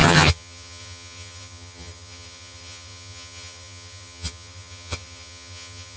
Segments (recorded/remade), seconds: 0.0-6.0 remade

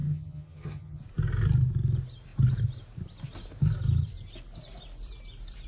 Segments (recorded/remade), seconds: 0.0-1.0 remade; 1.0-5.7 recorded

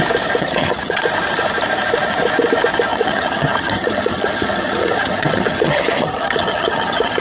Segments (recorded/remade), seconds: 0.0-0.4 recorded; 0.4-1.0 remade; 1.0-2.9 recorded; 2.9-7.2 remade

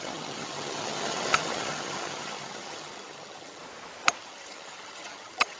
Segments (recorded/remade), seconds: 0.0-3.6 remade; 3.6-4.2 recorded; 4.2-5.6 remade

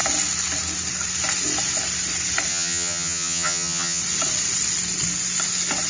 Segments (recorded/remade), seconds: 0.0-2.5 recorded; 2.5-4.0 remade; 4.0-5.9 recorded

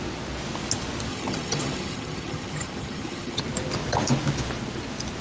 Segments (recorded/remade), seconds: 0.0-1.1 recorded; 1.1-3.4 remade; 3.4-5.2 recorded

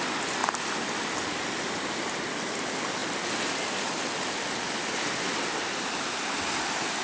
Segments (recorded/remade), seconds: 0.0-7.0 recorded

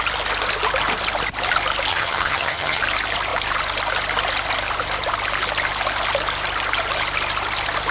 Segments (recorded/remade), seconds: 0.0-1.9 recorded; 1.9-2.8 remade; 2.8-7.9 recorded